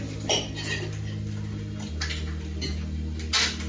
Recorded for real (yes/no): yes